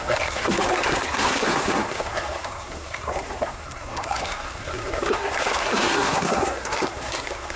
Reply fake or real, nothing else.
fake